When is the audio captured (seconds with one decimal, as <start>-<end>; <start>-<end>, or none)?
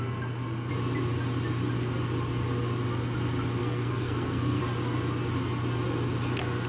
0.0-3.6; 4.6-6.7